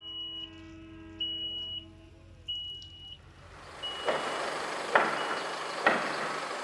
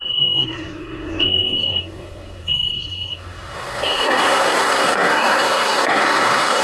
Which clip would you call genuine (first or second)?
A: first